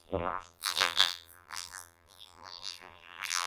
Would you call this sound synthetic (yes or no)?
yes